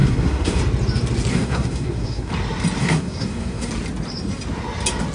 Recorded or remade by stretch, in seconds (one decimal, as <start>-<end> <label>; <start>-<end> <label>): 0.0-0.6 remade; 0.6-1.3 recorded; 1.3-2.3 remade; 2.3-2.8 recorded; 2.8-3.7 remade; 3.7-5.1 recorded